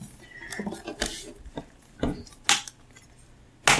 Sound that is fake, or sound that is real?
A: real